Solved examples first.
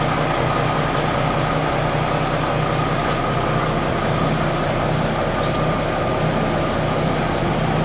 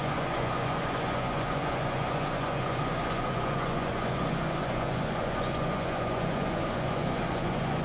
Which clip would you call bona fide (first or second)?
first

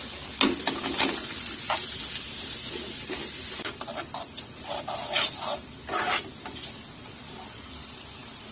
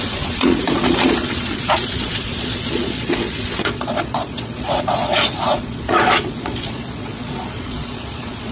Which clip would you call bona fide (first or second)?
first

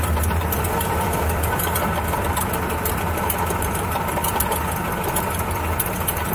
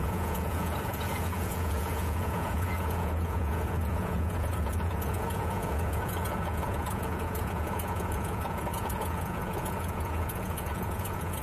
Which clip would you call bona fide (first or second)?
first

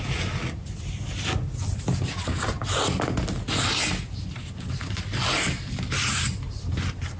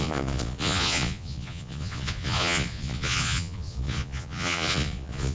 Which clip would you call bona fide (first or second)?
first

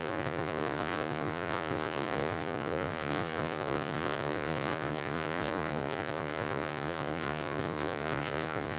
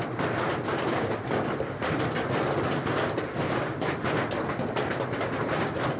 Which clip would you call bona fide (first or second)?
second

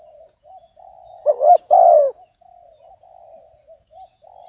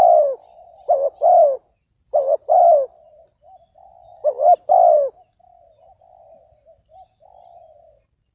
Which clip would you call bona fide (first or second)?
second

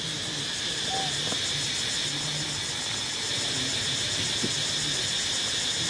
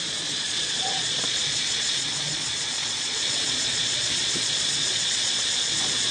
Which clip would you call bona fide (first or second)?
first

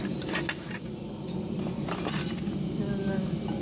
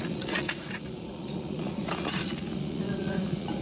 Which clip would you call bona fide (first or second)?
first